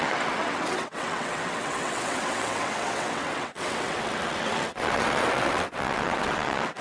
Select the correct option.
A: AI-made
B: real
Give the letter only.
A